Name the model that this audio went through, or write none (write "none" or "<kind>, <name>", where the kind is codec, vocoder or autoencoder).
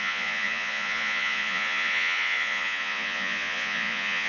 vocoder, Vocos